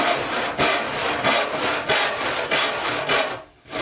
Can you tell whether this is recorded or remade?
recorded